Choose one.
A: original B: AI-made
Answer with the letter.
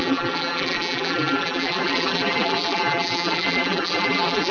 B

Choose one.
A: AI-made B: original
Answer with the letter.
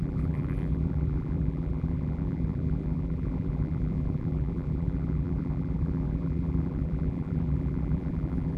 A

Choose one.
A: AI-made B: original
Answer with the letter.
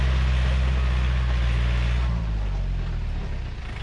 A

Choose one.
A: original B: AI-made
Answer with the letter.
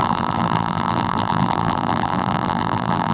B